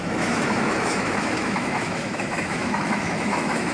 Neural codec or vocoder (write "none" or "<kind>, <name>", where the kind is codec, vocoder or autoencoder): autoencoder, DAC-VAE